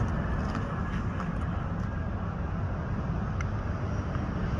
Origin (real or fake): real